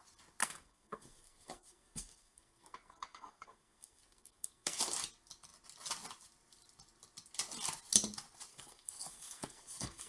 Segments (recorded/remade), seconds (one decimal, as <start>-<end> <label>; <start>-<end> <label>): 0.0-0.4 recorded; 0.4-4.8 remade; 4.8-8.5 recorded; 8.5-10.1 remade